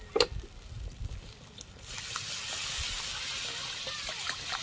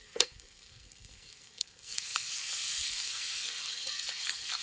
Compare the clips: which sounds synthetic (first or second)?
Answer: second